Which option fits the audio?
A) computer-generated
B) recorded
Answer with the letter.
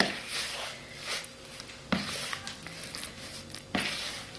B